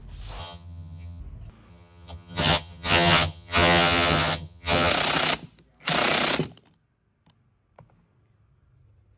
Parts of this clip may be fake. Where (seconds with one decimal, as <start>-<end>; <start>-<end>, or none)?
0.4-1.2; 1.7-4.9